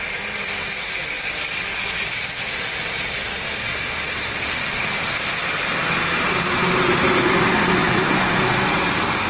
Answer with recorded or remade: recorded